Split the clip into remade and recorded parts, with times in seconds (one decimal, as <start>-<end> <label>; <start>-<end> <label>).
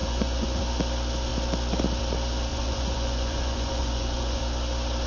0.0-0.6 remade; 0.6-2.5 recorded; 2.5-4.4 remade; 4.4-5.1 recorded